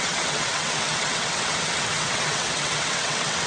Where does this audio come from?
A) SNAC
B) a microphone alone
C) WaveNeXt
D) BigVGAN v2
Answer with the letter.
C